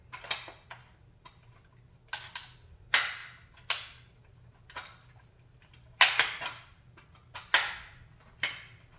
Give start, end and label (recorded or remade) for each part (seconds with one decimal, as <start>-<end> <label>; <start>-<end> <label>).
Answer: 0.0-9.0 recorded